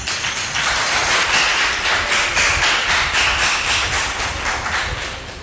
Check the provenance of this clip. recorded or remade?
recorded